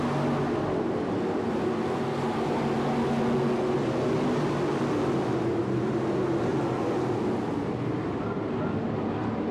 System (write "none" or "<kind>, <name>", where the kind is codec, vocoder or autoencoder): none